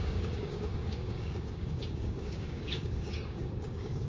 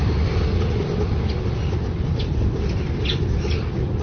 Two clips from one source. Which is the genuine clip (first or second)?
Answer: second